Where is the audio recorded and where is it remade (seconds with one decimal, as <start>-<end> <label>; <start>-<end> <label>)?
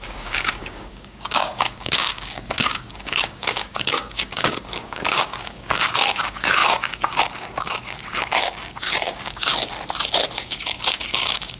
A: 0.0-9.5 remade; 9.5-10.4 recorded; 10.4-11.6 remade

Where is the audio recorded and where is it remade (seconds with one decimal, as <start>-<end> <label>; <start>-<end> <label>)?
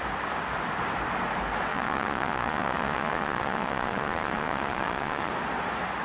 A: 0.0-1.7 recorded; 1.7-5.3 remade; 5.3-6.0 recorded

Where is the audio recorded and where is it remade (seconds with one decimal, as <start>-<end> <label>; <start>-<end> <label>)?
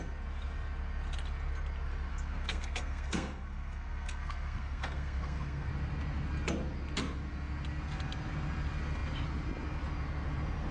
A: 0.0-2.1 recorded; 2.1-5.7 remade; 5.7-10.7 recorded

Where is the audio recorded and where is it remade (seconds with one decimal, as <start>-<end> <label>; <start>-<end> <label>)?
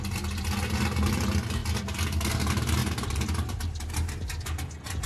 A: 0.0-2.8 recorded; 2.8-3.9 remade; 3.9-5.1 recorded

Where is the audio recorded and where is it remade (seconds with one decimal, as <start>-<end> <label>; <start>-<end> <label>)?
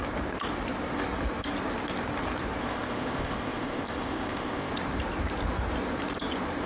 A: 0.0-2.6 recorded; 2.6-4.7 remade; 4.7-6.7 recorded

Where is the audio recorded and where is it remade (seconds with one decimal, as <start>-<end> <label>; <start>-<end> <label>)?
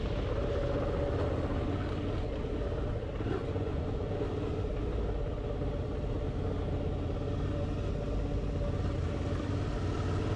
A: 0.0-3.4 recorded; 3.4-4.1 remade; 4.1-10.4 recorded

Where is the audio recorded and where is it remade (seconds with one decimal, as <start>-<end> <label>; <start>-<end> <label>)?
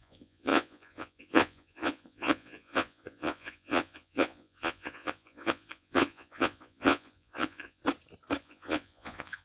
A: 0.0-7.8 remade; 7.8-8.4 recorded; 8.4-9.4 remade